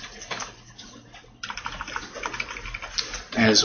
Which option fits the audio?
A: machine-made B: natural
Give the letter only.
B